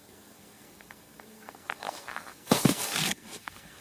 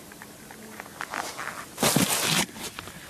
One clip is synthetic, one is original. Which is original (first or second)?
second